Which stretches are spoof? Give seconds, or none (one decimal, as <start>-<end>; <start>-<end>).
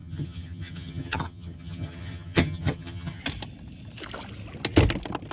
0.0-3.2